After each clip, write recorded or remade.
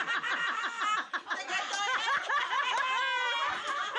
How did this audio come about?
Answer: recorded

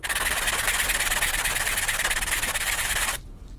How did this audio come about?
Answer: recorded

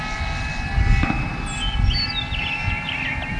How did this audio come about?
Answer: recorded